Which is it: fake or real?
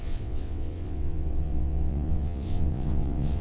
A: fake